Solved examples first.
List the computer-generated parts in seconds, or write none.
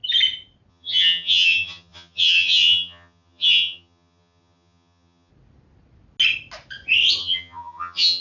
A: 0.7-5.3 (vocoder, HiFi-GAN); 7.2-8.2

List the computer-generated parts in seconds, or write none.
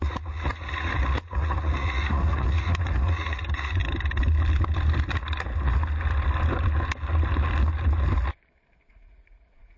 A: 0.0-3.8 (vocoder, Vocos); 8.9-9.8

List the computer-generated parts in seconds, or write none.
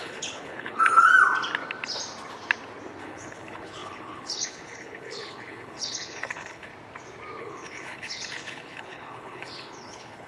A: 0.0-1.1 (codec, HILCodec); 3.0-6.7; 7.4-10.3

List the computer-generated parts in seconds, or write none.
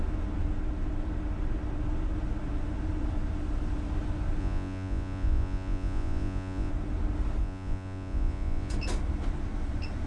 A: 4.4-6.7 (vocoder, Vocos); 7.4-8.7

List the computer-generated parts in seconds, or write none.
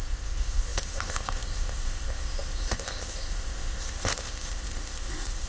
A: 0.0-5.5 (codec, ZipCodec)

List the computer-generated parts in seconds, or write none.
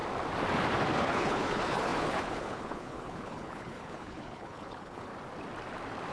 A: 1.0-5.1 (codec, HILCodec)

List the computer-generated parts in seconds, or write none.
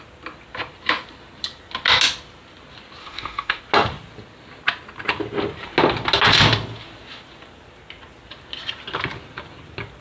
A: 3.0-3.6 (autoencoder, DAC-VAE)